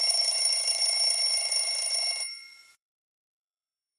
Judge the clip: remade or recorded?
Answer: remade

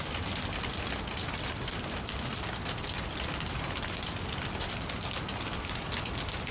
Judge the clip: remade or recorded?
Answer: recorded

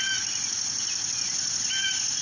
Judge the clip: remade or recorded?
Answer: recorded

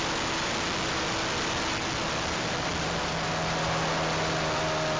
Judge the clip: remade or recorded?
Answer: recorded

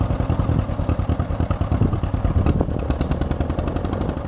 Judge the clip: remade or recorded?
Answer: recorded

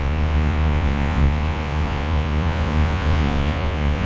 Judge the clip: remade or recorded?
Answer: remade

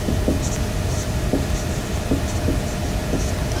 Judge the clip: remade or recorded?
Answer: recorded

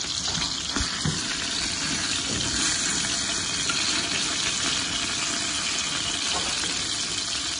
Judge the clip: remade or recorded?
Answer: recorded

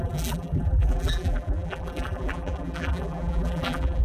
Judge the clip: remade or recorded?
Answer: remade